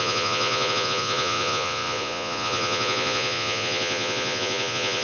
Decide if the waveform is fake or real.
fake